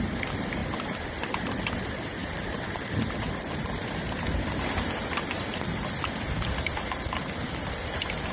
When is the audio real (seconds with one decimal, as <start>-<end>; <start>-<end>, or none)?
none